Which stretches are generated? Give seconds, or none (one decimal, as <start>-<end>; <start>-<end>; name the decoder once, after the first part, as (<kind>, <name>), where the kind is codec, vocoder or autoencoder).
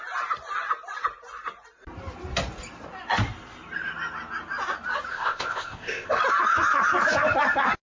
5.1-6.2 (codec, ZipCodec)